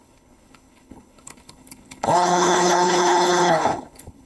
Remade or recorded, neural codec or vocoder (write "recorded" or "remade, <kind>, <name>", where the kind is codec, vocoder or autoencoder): remade, codec, HILCodec